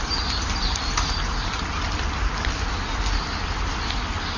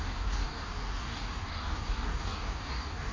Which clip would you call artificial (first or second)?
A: second